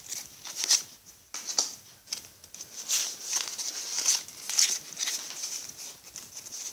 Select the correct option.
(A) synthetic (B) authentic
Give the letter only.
B